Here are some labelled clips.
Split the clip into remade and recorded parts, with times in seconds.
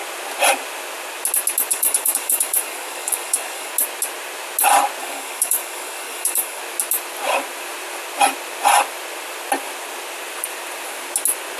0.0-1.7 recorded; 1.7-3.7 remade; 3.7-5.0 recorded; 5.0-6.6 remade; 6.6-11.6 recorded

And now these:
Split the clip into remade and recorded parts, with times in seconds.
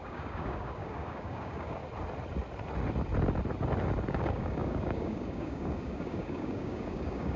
0.0-1.8 remade; 1.8-4.1 recorded; 4.1-7.4 remade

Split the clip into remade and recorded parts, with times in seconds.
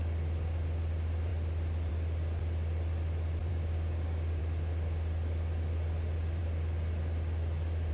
0.0-3.5 recorded; 3.5-4.4 remade; 4.4-7.9 recorded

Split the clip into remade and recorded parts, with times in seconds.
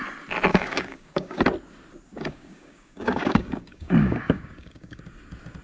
0.0-0.5 recorded; 0.5-1.4 remade; 1.4-2.1 recorded; 2.1-5.0 remade; 5.0-5.6 recorded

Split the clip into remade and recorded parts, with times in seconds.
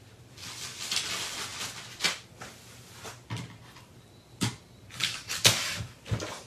0.0-5.0 recorded; 5.0-5.8 remade; 5.8-6.5 recorded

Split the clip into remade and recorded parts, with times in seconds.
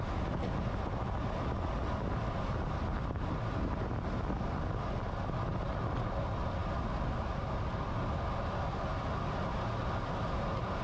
0.0-10.8 recorded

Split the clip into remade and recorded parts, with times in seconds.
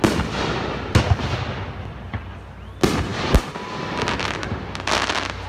0.0-5.5 recorded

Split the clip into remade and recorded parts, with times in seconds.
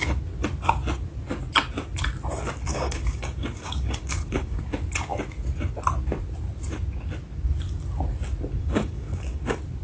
0.0-2.7 recorded; 2.7-4.6 remade; 4.6-8.6 recorded; 8.6-9.4 remade; 9.4-9.8 recorded